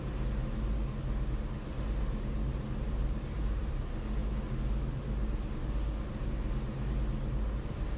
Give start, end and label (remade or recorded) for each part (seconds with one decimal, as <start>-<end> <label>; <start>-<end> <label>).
0.0-2.5 recorded; 2.5-3.8 remade; 3.8-8.0 recorded